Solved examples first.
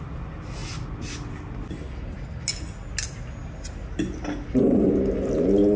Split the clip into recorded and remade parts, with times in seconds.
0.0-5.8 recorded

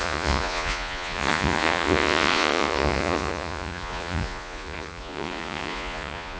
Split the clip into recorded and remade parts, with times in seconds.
0.0-6.4 remade

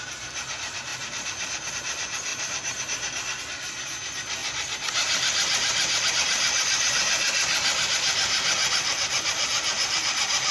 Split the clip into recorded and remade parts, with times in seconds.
0.0-10.5 recorded